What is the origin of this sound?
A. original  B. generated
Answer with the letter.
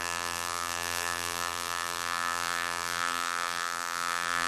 B